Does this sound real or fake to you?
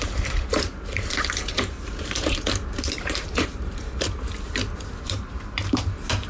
fake